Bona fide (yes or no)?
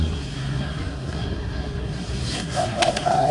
no